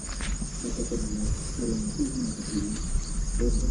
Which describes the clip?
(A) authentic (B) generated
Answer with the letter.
A